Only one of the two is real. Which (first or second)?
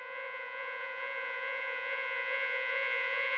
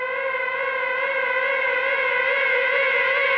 second